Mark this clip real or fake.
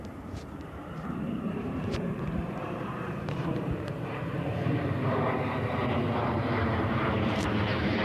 fake